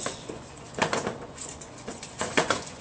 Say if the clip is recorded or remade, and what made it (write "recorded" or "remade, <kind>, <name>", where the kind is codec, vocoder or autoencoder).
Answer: remade, vocoder, Vocos